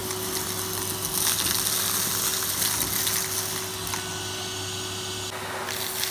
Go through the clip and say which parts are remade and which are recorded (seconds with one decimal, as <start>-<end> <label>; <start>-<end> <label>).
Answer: 0.0-6.1 recorded